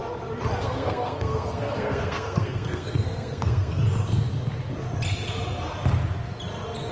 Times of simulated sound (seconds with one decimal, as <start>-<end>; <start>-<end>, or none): 0.6-3.8